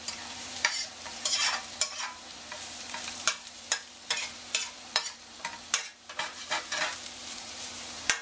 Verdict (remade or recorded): remade